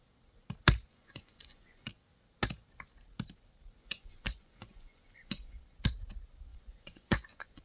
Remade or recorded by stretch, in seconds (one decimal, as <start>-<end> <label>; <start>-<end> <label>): 0.0-0.9 recorded; 0.9-1.9 remade; 1.9-3.8 recorded; 3.8-5.6 remade; 5.6-6.5 recorded; 6.5-7.6 remade